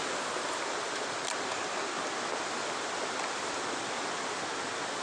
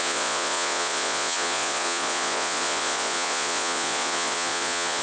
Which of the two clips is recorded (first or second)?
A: first